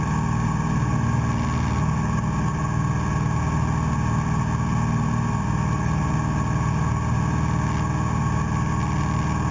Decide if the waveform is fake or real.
real